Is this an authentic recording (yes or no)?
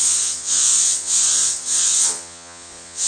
no